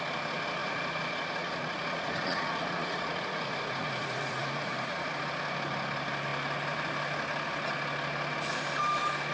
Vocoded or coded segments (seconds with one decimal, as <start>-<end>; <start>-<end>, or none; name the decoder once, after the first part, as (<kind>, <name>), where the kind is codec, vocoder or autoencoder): 0.6-5.1 (vocoder, Vocos)